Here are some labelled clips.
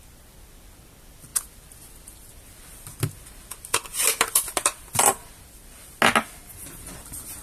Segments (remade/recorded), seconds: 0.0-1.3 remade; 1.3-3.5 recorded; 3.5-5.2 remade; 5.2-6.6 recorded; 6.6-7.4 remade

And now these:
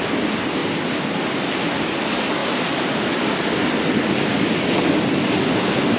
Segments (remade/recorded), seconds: 0.0-6.0 recorded

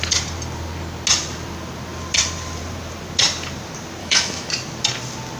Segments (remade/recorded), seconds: 0.0-4.0 recorded; 4.0-4.5 remade; 4.5-5.4 recorded

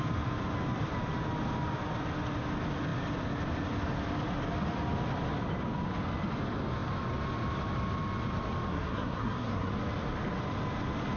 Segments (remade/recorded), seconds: 0.0-8.7 recorded; 8.7-9.7 remade; 9.7-11.2 recorded